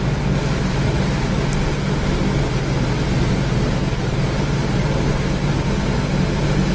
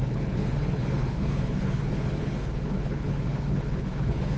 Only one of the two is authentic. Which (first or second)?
first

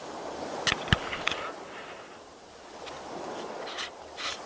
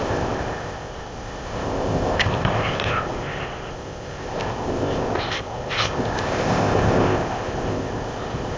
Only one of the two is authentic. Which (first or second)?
first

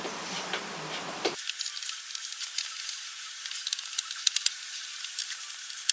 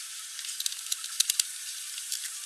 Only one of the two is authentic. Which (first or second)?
first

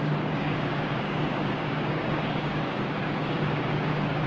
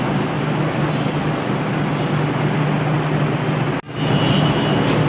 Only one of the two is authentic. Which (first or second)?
second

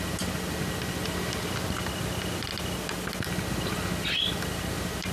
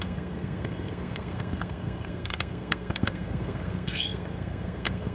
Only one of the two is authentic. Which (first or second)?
first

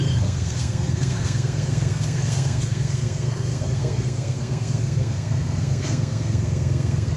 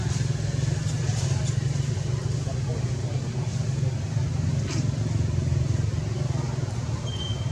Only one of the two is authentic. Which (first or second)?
second